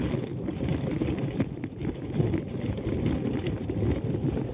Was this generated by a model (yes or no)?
no